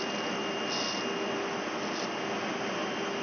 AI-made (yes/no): no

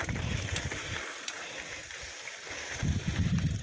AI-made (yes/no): yes